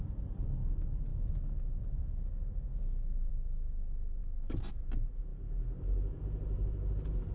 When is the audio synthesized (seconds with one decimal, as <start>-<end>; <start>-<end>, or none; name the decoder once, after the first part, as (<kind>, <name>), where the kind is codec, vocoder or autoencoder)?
1.1-1.8 (vocoder, Vocos)

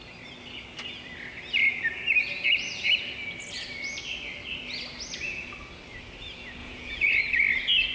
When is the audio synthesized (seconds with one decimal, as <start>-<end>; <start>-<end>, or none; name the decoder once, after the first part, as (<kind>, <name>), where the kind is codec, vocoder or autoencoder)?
6.6-7.2 (vocoder, Vocos)

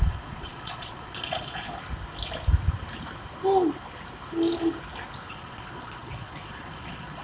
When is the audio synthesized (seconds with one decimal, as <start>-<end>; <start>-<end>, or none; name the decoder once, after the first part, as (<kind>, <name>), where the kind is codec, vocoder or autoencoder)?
0.0-1.7 (vocoder, Vocos); 5.3-7.2

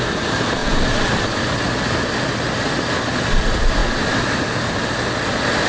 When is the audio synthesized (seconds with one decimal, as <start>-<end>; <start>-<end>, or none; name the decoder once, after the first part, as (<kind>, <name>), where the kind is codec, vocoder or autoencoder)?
none

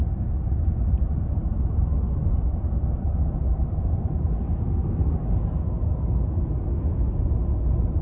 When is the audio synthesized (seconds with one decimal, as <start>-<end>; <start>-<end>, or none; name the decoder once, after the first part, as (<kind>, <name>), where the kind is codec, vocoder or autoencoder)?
none

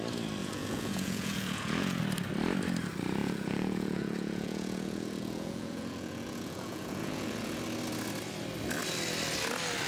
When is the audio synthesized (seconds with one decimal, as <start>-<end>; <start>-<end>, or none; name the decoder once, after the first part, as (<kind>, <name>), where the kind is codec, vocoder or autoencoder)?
0.4-2.0 (vocoder, Vocos); 3.2-7.6

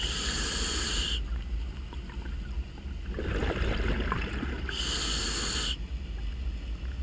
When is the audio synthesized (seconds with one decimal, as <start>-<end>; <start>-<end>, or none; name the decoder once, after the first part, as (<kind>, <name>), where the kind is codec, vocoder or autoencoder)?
none

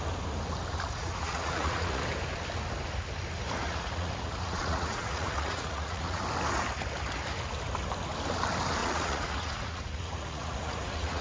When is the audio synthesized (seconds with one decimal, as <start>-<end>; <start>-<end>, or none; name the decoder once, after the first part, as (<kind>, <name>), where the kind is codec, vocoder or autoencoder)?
1.0-2.0 (vocoder, Vocos); 3.6-6.2; 8.8-11.2